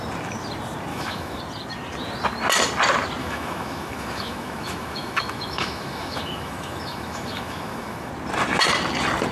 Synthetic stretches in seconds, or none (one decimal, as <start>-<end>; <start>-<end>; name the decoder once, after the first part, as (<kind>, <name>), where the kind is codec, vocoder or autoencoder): 0.9-1.4 (autoencoder, DAC-VAE); 3.2-8.1